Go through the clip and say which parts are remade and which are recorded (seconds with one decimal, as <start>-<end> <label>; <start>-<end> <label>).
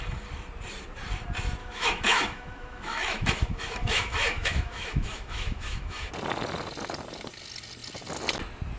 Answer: 0.0-1.6 recorded; 1.6-6.1 remade; 6.1-8.8 recorded